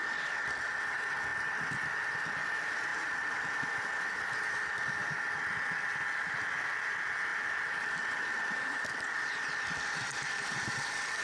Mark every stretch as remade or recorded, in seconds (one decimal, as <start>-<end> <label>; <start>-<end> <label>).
0.0-1.3 recorded; 1.3-2.1 remade; 2.1-7.3 recorded; 7.3-11.2 remade